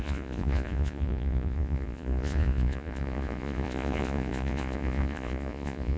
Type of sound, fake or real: fake